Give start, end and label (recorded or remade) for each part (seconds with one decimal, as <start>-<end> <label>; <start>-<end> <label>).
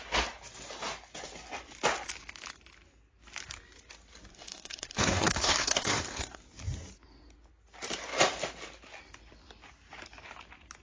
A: 0.0-4.3 recorded; 4.3-6.4 remade; 6.4-10.8 recorded